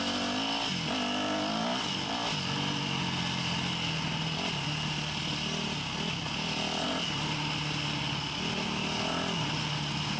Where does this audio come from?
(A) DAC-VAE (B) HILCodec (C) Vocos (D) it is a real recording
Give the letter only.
D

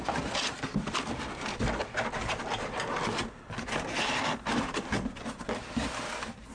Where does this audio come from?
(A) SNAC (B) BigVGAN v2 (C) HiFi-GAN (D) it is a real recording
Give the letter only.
D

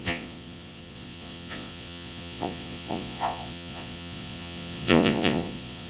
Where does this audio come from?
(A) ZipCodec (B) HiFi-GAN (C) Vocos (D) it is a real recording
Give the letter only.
C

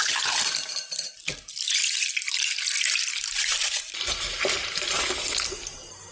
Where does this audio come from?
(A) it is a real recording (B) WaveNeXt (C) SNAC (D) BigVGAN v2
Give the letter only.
A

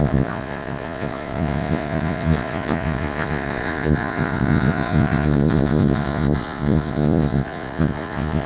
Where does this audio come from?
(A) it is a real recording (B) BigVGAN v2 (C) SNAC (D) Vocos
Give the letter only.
D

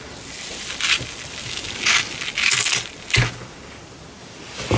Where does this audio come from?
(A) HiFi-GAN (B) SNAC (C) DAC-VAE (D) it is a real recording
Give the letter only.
D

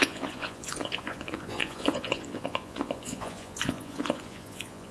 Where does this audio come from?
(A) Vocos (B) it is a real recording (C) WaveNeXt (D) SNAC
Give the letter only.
A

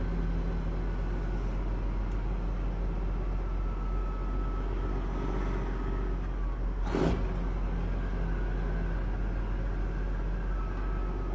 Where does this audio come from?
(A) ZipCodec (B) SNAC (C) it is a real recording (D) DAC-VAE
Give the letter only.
C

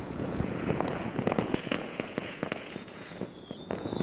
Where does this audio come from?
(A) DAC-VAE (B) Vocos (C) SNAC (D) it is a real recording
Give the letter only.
B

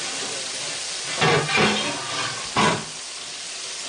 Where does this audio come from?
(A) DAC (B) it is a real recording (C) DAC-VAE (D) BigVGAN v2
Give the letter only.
B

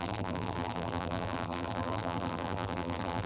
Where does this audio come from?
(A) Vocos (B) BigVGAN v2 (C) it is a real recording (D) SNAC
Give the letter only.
B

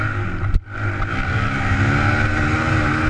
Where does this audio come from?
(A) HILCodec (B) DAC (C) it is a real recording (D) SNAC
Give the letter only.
C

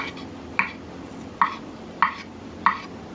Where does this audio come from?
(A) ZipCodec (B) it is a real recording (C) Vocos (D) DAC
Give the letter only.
B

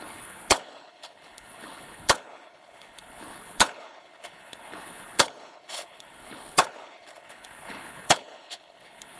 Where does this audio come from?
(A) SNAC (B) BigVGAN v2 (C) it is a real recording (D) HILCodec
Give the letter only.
D